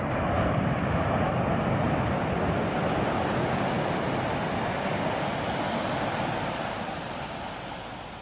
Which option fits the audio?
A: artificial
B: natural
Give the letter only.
B